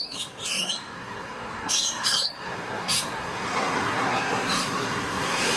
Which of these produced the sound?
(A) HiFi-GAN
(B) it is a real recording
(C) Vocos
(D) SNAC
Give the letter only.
D